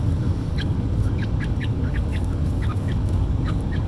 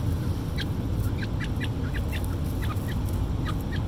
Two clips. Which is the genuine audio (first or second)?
second